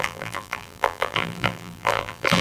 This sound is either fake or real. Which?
fake